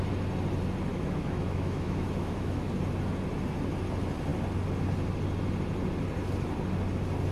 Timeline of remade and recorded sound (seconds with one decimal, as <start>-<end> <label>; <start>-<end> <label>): 0.0-0.9 recorded; 0.9-2.7 remade; 2.7-7.3 recorded